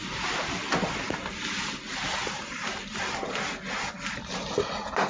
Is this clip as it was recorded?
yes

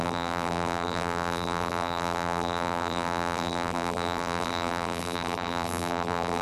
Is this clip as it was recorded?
no